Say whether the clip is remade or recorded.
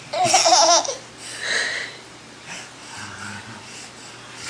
recorded